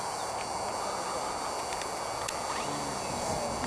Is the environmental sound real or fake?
real